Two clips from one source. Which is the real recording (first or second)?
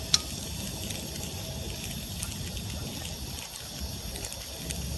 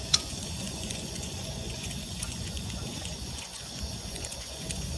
first